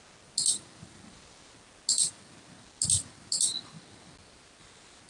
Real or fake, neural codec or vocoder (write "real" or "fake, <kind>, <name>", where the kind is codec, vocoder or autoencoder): real